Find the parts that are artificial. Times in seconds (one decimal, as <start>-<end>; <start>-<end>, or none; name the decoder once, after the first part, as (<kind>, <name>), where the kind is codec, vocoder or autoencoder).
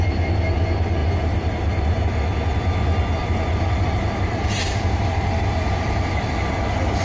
1.0-2.0 (vocoder, BigVGAN v2); 3.2-6.3